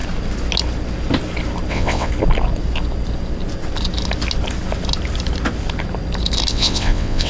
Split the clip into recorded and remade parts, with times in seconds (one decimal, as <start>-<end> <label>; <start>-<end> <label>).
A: 0.0-1.7 recorded; 1.7-2.1 remade; 2.1-6.5 recorded; 6.5-7.3 remade